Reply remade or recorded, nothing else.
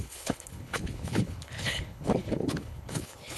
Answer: remade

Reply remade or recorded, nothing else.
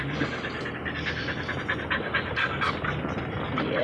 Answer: recorded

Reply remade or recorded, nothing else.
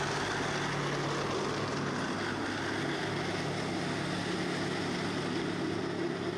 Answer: recorded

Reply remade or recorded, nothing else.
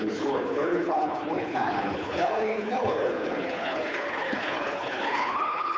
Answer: remade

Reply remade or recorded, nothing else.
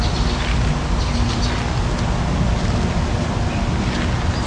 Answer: recorded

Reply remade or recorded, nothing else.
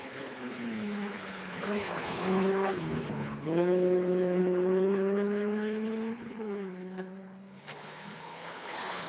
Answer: remade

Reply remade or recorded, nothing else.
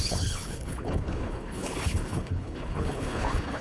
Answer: remade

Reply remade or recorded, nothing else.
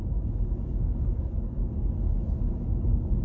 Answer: recorded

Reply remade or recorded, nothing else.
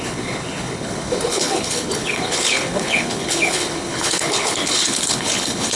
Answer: remade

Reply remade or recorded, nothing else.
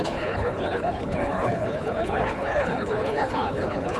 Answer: remade